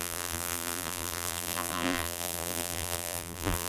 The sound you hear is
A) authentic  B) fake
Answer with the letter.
B